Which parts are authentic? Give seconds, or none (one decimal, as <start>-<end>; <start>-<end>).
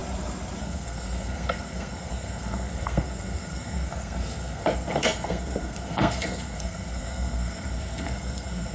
0.0-0.6